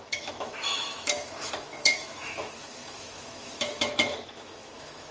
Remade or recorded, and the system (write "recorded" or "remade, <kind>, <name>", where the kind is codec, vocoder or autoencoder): remade, autoencoder, DAC-VAE